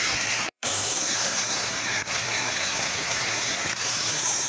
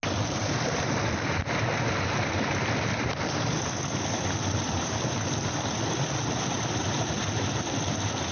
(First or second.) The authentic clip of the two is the second